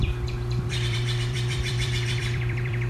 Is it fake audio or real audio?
fake